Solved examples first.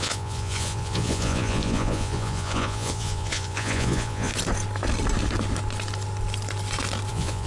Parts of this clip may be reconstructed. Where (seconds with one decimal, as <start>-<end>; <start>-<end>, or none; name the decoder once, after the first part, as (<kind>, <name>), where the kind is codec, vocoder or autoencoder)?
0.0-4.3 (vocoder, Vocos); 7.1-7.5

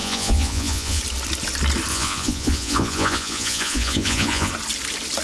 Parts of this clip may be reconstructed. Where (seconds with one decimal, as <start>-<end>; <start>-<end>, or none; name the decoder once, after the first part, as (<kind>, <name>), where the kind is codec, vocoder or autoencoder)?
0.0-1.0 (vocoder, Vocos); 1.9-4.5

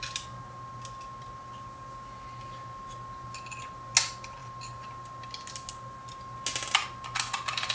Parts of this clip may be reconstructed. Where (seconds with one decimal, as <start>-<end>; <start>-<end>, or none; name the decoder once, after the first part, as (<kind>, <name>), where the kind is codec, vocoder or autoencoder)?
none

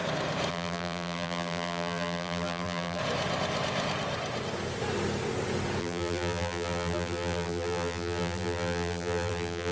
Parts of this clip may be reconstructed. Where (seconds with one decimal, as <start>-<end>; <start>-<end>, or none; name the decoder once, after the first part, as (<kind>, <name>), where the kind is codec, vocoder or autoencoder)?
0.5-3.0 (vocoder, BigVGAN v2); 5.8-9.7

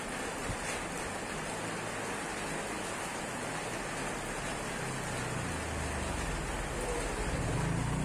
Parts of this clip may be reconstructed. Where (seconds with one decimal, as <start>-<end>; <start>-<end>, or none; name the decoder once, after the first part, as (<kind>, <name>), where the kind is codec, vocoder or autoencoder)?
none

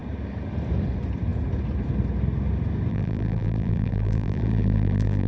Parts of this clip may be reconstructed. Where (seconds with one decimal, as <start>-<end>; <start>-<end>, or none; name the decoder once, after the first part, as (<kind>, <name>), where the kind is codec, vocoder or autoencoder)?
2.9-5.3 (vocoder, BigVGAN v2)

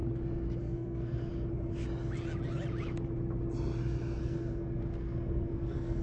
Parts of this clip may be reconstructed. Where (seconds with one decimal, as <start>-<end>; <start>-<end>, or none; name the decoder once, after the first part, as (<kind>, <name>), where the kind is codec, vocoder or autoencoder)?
0.6-1.3 (codec, SNAC); 4.2-6.0

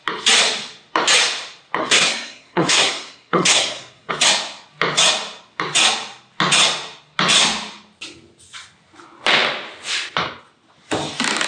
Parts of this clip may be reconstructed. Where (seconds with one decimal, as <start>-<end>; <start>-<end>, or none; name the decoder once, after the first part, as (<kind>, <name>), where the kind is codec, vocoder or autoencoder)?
1.8-4.1 (codec, SNAC)